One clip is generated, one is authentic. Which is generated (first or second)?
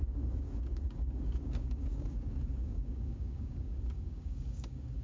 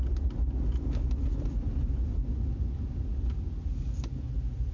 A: first